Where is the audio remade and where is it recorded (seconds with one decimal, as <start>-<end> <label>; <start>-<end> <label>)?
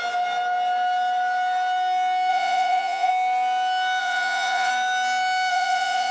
0.0-2.3 recorded; 2.3-3.1 remade; 3.1-4.0 recorded; 4.0-4.7 remade; 4.7-5.5 recorded; 5.5-6.1 remade